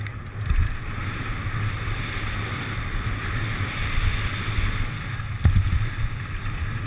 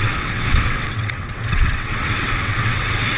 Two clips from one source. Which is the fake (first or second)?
second